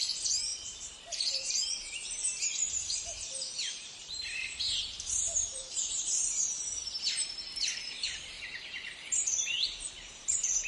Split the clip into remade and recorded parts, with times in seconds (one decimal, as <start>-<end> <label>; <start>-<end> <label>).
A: 0.0-10.7 remade

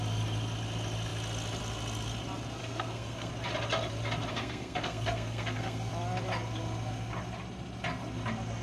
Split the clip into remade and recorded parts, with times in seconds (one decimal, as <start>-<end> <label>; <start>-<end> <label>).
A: 0.0-2.6 recorded; 2.6-3.3 remade; 3.3-4.3 recorded; 4.3-5.9 remade; 5.9-8.6 recorded

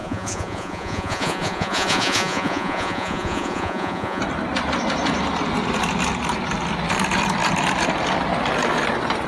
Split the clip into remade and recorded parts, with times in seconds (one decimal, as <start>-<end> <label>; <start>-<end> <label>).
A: 0.0-4.2 remade; 4.2-9.3 recorded